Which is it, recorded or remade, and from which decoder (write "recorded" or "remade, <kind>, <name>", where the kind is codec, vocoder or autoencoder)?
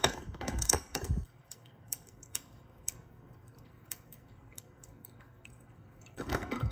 remade, codec, SNAC